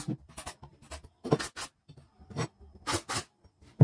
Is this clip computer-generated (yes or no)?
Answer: no